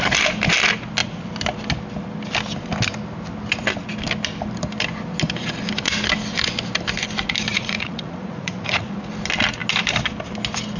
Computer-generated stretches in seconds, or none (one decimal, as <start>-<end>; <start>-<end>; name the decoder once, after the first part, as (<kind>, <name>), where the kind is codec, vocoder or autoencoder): 7.5-9.1 (vocoder, Vocos)